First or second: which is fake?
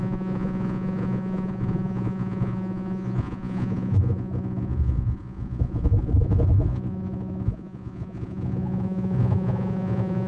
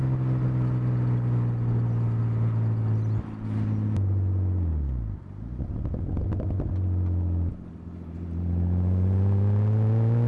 first